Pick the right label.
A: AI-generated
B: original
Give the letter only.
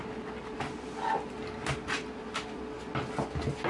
B